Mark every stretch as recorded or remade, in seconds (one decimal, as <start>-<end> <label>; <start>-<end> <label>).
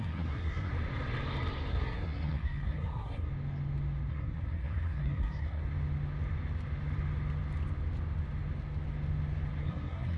0.0-0.7 remade; 0.7-1.7 recorded; 1.7-3.3 remade; 3.3-4.1 recorded; 4.1-5.6 remade; 5.6-9.6 recorded; 9.6-10.2 remade